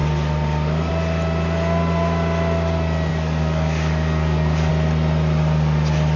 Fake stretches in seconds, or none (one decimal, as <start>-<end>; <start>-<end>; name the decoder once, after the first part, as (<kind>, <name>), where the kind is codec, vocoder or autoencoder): 3.1-4.7 (codec, DAC)